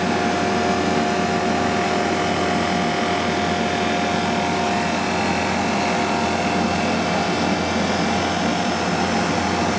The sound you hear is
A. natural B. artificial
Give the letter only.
A